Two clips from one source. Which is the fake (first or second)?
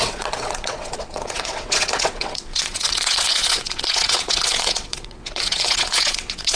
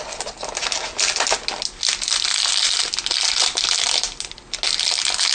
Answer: first